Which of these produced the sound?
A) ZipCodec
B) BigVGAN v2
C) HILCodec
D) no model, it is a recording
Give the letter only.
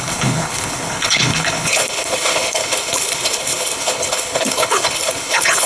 C